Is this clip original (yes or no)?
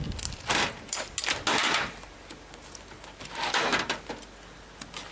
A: yes